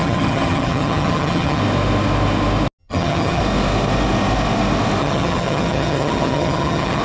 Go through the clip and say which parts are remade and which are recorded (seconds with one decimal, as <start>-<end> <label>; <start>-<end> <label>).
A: 0.0-1.6 remade; 1.6-2.8 recorded; 2.8-3.4 remade; 3.4-5.0 recorded; 5.0-7.0 remade